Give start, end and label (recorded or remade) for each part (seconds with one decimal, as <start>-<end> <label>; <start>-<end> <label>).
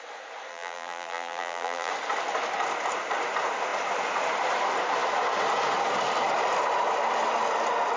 0.0-0.5 recorded; 0.5-1.9 remade; 1.9-8.0 recorded